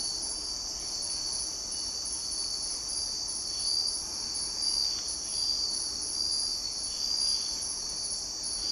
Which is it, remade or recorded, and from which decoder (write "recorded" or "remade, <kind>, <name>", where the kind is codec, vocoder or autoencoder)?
recorded